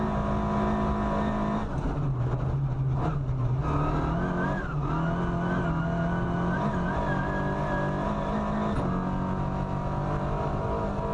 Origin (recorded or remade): recorded